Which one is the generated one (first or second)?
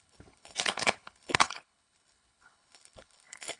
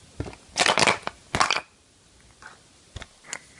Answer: first